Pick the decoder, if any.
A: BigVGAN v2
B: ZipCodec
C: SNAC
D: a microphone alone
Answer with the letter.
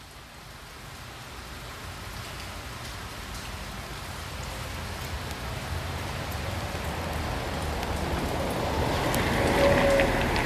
D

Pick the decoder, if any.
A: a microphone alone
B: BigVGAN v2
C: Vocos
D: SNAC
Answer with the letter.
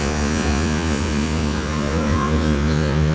C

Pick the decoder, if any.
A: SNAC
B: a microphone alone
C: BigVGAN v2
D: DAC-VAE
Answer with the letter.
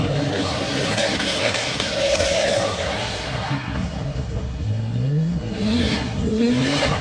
A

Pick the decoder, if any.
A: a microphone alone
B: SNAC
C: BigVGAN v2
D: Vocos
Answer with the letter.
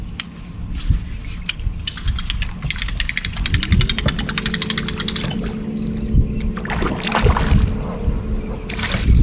A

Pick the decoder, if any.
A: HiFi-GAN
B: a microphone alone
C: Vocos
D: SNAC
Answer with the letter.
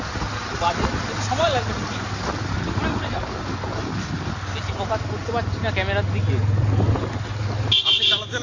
B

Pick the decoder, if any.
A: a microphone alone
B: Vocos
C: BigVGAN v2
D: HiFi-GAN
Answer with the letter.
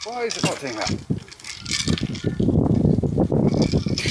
A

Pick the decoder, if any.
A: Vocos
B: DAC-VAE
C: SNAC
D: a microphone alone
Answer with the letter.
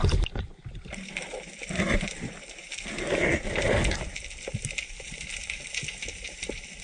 D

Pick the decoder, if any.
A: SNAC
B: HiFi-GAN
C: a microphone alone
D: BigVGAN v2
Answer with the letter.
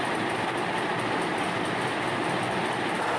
C